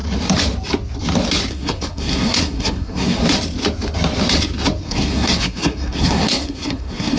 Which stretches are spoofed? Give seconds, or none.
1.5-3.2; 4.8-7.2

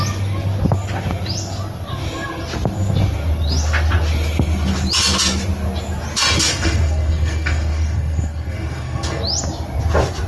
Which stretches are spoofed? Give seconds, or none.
6.5-9.2

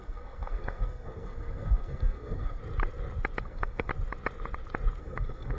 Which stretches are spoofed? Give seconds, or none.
0.0-2.6; 3.4-3.9; 5.0-5.6

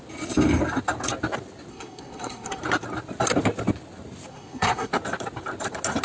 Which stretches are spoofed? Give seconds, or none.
1.7-2.6; 4.3-4.9

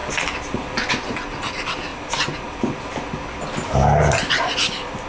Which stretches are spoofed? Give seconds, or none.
none

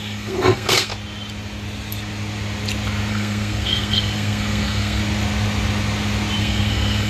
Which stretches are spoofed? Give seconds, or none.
0.0-0.9; 3.1-5.0; 6.4-7.1

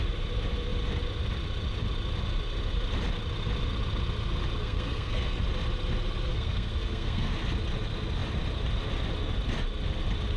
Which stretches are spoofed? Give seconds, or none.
4.6-5.4; 6.3-7.3